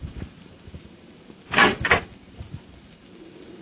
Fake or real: fake